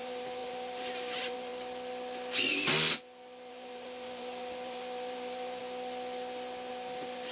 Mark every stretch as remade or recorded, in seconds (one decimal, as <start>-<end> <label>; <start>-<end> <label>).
0.0-1.5 remade; 1.5-3.5 recorded; 3.5-5.6 remade; 5.6-6.7 recorded; 6.7-7.3 remade